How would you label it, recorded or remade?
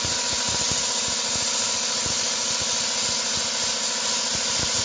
recorded